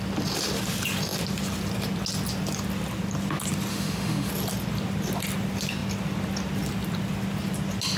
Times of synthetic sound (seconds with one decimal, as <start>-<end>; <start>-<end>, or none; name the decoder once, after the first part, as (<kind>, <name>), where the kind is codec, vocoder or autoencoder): 3.7-4.3 (autoencoder, DAC-VAE)